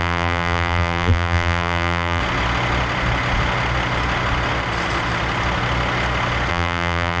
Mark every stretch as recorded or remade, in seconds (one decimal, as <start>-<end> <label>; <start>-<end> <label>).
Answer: 0.0-2.2 remade; 2.2-6.5 recorded; 6.5-7.2 remade